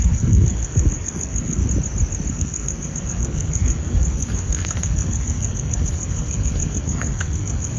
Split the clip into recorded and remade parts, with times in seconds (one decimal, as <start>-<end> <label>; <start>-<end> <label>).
0.0-1.6 remade; 1.6-2.3 recorded; 2.3-7.8 remade